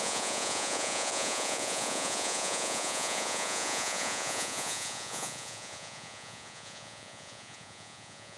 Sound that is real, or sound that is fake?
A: fake